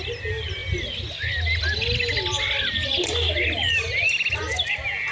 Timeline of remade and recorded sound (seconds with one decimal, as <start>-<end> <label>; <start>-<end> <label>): 0.0-5.1 recorded